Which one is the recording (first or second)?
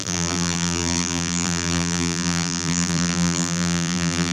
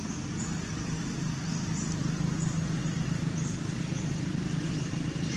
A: second